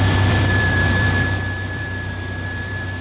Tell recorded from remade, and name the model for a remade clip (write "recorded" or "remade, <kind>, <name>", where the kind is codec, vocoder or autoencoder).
remade, vocoder, BigVGAN v2